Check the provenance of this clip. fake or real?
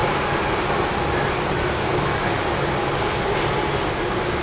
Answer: real